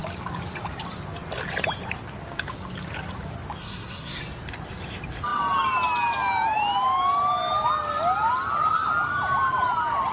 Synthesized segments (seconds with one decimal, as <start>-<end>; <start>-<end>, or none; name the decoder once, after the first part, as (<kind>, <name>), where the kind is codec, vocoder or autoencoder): 3.6-4.2 (codec, SNAC)